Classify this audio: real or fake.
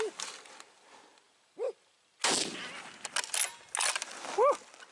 real